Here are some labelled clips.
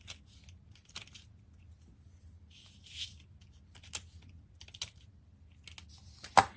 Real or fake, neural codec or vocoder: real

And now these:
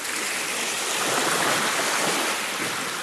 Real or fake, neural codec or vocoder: real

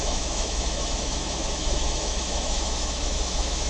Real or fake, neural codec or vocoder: fake, autoencoder, DAC-VAE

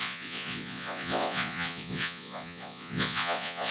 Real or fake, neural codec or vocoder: fake, vocoder, Vocos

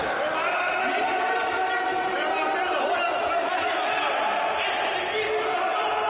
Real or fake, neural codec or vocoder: real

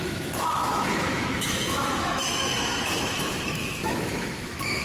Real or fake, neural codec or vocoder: fake, autoencoder, DAC-VAE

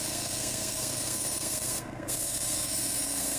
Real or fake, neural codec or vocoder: fake, codec, SNAC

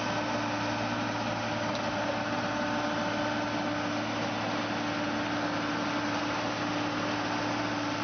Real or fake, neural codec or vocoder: real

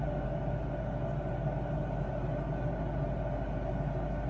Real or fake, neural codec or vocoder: real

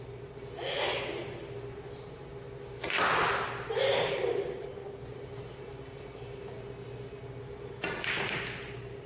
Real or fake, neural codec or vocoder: real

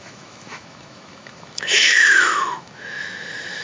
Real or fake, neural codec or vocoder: fake, autoencoder, DAC-VAE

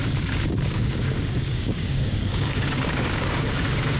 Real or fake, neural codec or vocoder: fake, codec, DAC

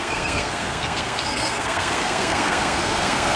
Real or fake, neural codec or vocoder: fake, codec, SNAC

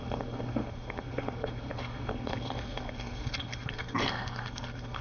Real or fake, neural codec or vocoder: fake, codec, SNAC